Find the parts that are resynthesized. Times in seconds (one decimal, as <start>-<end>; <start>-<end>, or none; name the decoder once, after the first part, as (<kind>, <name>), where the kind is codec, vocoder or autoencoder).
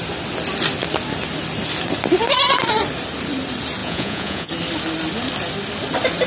3.8-4.5 (vocoder, Vocos)